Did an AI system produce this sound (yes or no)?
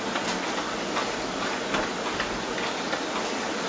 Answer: no